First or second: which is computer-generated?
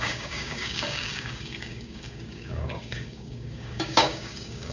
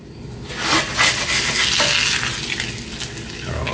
first